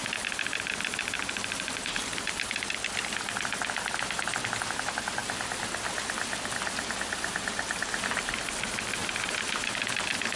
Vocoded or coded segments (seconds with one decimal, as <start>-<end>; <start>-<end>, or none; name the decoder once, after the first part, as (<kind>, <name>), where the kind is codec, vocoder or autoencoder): none